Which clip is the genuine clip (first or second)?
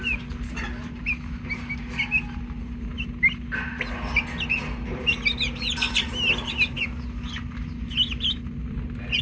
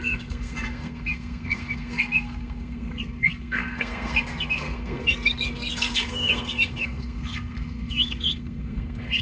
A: first